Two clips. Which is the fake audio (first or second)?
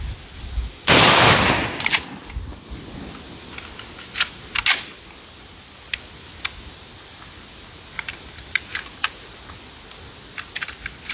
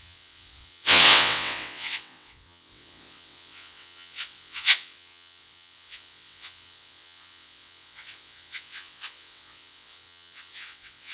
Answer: second